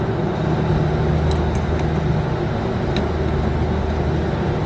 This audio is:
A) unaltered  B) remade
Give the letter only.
A